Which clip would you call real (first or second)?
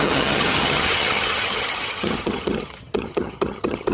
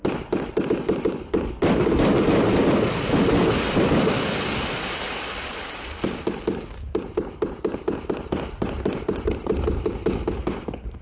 second